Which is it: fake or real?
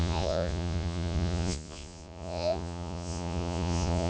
fake